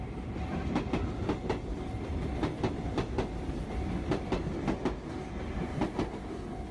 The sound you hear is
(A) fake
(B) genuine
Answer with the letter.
B